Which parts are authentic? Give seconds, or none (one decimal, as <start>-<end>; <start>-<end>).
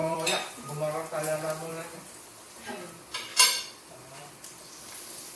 0.7-1.7; 2.7-3.3; 4.3-5.4